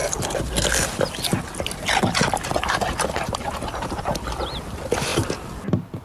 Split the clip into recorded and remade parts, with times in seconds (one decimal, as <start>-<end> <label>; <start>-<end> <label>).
0.0-6.0 recorded